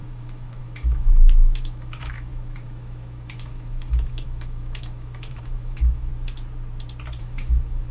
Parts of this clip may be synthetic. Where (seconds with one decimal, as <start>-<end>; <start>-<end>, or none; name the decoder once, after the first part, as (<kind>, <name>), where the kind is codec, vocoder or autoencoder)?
0.0-6.1 (autoencoder, DAC-VAE); 7.2-7.9